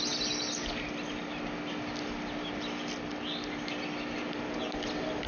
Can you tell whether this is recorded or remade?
recorded